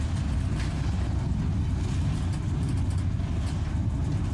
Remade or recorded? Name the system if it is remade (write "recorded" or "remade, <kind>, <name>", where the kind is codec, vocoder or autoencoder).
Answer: recorded